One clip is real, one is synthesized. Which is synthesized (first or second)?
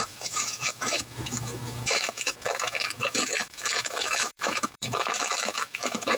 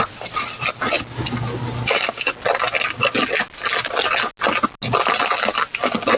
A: first